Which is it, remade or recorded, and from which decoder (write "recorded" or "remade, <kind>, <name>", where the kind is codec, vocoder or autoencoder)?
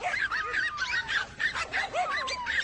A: remade, vocoder, BigVGAN v2